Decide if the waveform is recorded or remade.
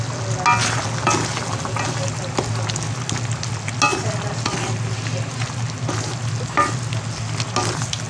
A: recorded